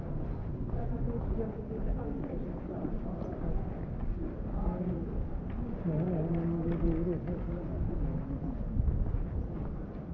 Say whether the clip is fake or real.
real